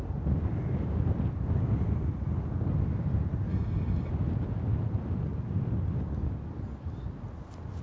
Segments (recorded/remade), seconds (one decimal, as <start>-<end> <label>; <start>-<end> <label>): 0.0-3.5 recorded; 3.5-4.1 remade; 4.1-7.8 recorded